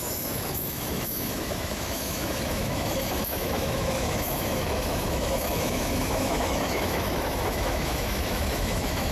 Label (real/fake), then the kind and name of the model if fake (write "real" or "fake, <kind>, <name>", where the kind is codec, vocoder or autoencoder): fake, autoencoder, DAC-VAE